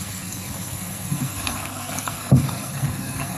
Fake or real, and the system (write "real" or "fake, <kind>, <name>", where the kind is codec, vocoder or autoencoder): fake, codec, SNAC